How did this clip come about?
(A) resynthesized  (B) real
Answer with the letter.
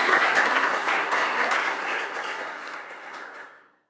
A